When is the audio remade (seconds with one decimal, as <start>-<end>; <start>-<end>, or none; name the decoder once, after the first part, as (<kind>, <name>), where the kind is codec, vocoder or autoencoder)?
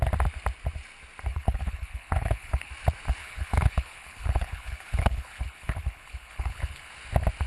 1.3-2.7 (codec, HILCodec); 3.2-6.9